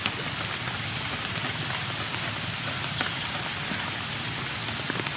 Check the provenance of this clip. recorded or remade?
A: recorded